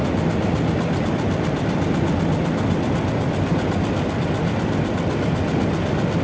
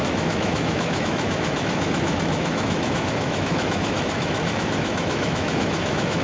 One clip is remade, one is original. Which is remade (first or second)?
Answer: second